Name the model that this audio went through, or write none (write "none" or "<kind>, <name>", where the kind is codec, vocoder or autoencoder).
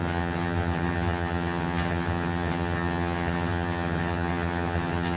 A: vocoder, HiFi-GAN